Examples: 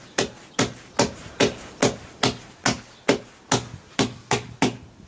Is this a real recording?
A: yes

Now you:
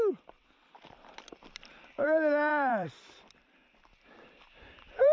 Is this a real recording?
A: no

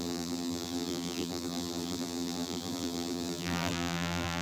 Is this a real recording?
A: no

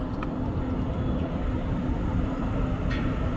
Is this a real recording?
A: no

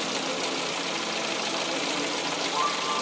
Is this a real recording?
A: yes